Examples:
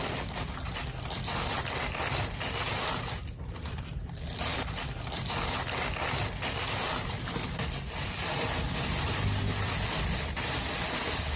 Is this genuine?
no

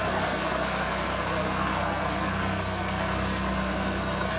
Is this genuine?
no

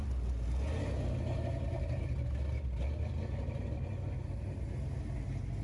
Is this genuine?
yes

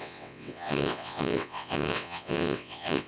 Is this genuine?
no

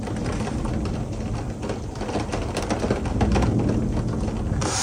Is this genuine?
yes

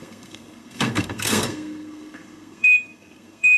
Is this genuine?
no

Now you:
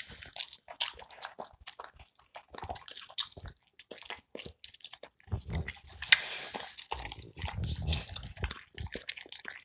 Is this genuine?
yes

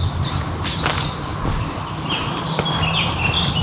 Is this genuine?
yes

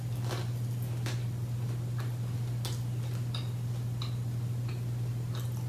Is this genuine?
yes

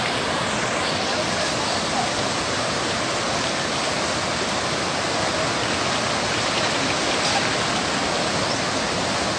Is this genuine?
yes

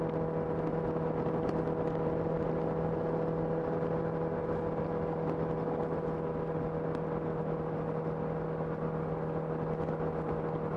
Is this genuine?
yes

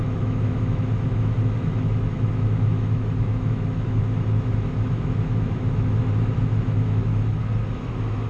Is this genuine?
no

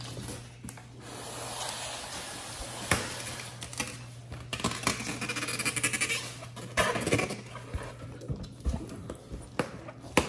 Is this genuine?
yes